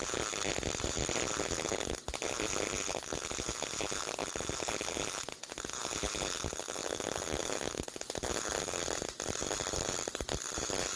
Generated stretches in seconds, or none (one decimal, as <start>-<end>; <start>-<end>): 0.0-0.5; 3.3-4.2; 5.1-11.0